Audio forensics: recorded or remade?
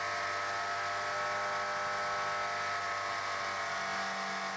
recorded